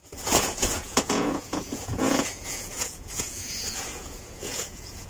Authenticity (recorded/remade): remade